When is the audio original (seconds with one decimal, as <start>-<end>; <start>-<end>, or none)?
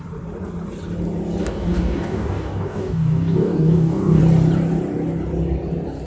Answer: 0.0-1.4; 4.2-6.1